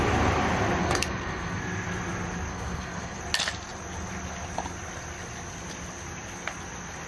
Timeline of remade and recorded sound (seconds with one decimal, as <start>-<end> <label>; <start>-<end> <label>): 0.0-0.8 recorded; 0.8-1.6 remade; 1.6-2.5 recorded; 2.5-3.2 remade; 3.2-7.1 recorded